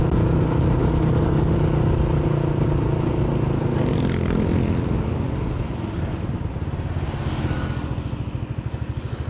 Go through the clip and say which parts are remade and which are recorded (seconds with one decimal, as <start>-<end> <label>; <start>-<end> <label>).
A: 0.0-0.8 recorded; 0.8-1.5 remade; 1.5-9.3 recorded